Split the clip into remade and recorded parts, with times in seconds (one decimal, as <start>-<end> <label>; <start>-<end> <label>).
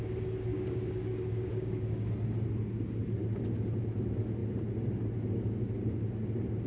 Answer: 0.0-0.5 recorded; 0.5-2.1 remade; 2.1-6.7 recorded